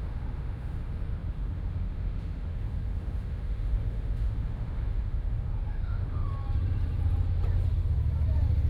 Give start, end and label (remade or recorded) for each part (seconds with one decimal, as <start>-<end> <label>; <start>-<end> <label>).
0.0-6.3 remade; 6.3-8.7 recorded